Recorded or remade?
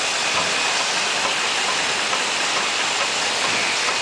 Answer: recorded